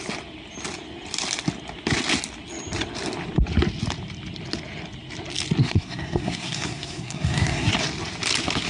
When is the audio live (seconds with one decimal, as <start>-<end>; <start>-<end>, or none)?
0.0-5.6; 7.7-8.7